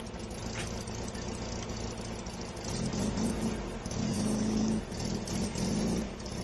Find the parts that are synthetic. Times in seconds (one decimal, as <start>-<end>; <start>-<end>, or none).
4.0-4.8